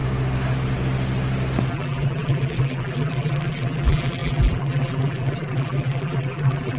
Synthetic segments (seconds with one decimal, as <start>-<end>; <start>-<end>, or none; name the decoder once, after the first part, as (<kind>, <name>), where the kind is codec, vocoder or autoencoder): 1.7-6.8 (vocoder, BigVGAN v2)